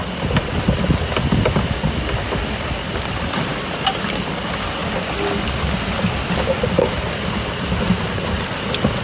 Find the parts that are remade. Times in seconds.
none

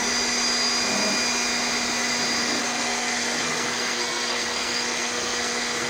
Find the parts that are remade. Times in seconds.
2.4-5.9 (codec, SNAC)

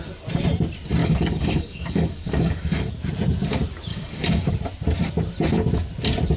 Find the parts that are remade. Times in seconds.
1.0-2.9 (codec, DAC); 3.9-4.5

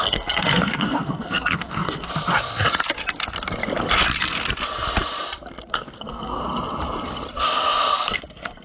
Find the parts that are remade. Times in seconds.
0.0-2.1 (codec, SNAC); 5.6-6.4; 7.9-8.6

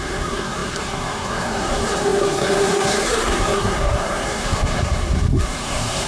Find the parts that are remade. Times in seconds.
0.0-6.1 (codec, SNAC)

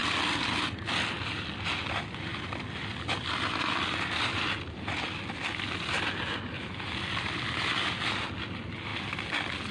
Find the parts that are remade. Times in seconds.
none

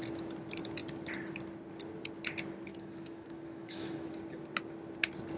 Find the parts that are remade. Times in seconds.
2.7-4.1 (autoencoder, DAC-VAE)